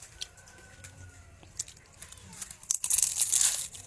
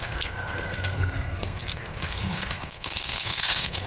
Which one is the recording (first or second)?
first